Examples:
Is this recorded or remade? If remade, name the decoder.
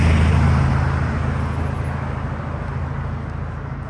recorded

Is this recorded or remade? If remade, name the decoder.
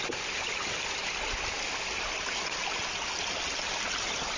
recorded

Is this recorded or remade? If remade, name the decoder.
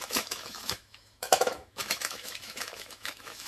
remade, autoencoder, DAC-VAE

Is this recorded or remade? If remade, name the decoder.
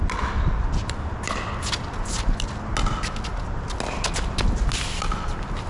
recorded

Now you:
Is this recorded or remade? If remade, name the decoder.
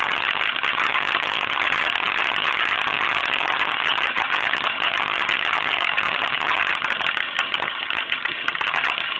remade, vocoder, HiFi-GAN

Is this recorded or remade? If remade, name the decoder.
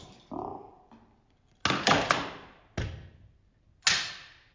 recorded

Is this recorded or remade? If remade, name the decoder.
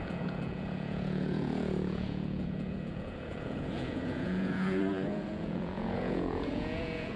remade, vocoder, Vocos